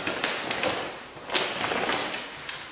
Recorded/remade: recorded